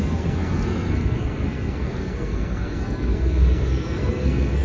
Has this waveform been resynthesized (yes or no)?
yes